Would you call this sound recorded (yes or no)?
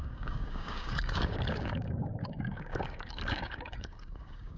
no